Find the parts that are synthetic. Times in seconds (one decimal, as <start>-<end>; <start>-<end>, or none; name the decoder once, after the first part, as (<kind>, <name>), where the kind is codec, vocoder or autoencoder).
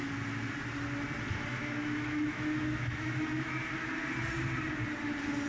1.6-3.6 (autoencoder, DAC-VAE)